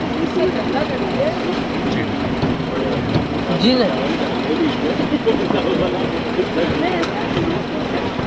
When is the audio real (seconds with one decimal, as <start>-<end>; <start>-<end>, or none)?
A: 0.0-8.3